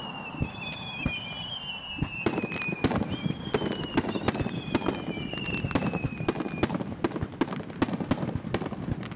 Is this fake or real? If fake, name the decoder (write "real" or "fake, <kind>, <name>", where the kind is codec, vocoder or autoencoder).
real